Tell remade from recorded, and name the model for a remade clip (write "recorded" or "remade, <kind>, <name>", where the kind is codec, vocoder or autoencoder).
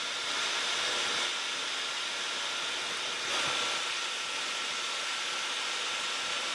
recorded